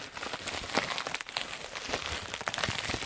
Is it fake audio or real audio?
real